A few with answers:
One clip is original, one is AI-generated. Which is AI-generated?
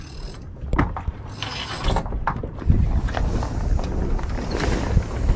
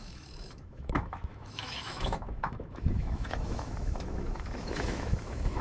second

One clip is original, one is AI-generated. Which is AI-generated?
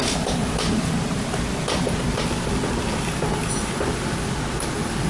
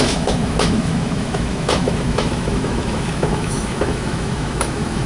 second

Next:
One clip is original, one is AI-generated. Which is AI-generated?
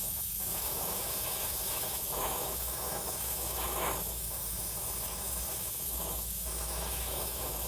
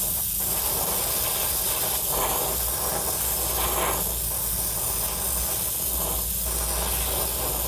first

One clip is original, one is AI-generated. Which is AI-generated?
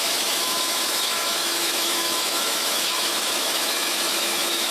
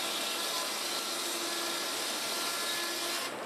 first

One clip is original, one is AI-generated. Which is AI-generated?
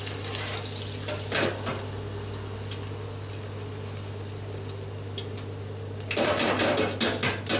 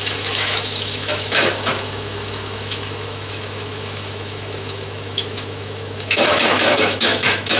second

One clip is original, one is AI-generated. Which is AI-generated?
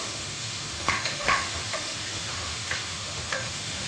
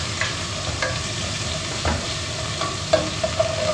first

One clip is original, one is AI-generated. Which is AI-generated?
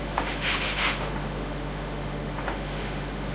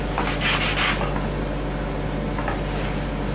first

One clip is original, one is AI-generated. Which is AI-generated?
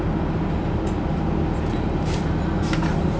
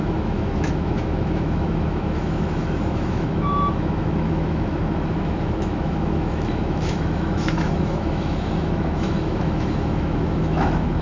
second